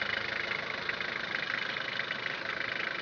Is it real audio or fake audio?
real